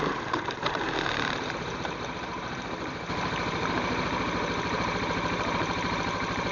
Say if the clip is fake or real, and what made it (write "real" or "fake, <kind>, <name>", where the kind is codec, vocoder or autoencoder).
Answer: fake, vocoder, BigVGAN v2